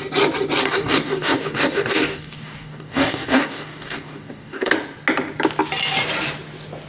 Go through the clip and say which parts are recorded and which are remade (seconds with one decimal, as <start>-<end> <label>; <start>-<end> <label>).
0.0-0.6 recorded; 0.6-4.7 remade; 4.7-6.9 recorded